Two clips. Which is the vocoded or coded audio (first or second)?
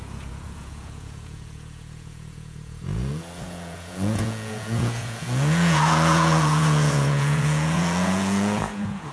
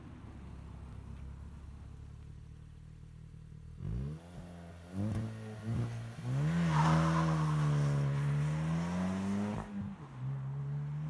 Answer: first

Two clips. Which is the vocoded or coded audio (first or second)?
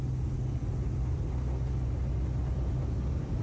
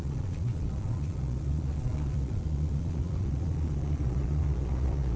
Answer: second